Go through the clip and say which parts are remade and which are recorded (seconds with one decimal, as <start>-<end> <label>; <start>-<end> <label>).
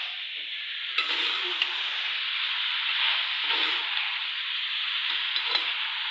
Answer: 0.0-6.1 recorded